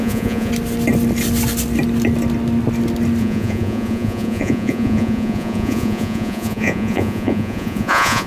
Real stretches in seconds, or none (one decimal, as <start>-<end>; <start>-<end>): 0.5-3.2